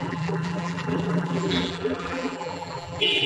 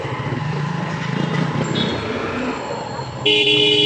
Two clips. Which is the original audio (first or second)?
second